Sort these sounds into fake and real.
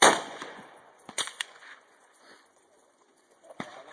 fake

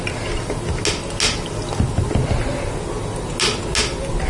real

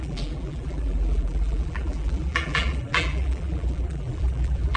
fake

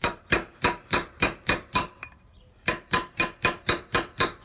fake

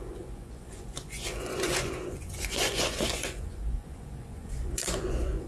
fake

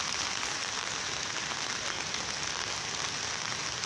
real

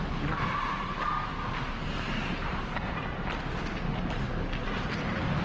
real